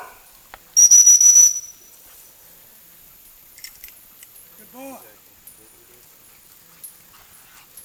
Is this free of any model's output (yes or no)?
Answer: yes